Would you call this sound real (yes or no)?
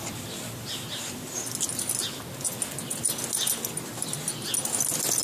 yes